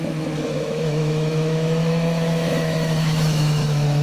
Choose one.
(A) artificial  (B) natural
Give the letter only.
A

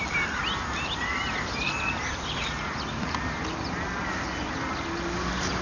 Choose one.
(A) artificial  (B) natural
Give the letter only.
B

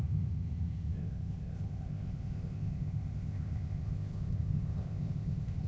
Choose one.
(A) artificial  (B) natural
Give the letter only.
A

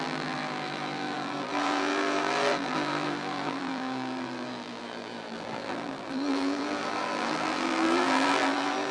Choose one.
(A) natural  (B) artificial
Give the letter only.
B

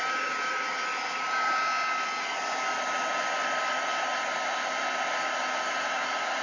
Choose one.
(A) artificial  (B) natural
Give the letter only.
B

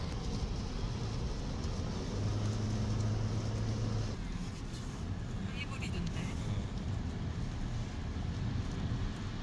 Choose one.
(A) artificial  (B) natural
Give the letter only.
B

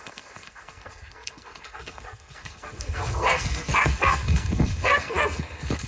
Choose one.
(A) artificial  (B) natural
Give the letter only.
A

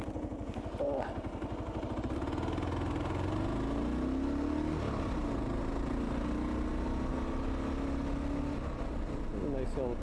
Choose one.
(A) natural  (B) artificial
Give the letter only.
A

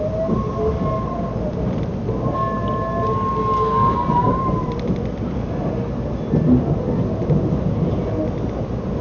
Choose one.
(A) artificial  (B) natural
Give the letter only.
B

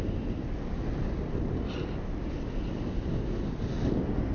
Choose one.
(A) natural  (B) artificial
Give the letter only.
A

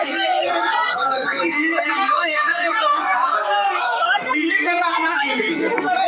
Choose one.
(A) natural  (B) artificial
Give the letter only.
B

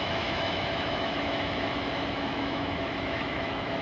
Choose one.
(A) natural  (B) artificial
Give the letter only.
B